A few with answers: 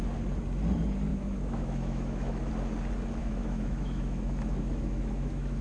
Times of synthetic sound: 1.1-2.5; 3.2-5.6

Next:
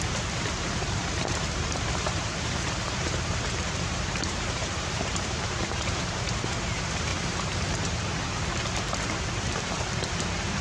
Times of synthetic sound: 0.0-10.6

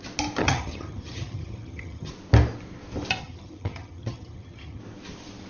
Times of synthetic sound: 0.4-2.1; 3.2-4.8